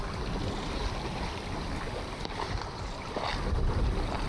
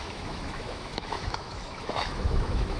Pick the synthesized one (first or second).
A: second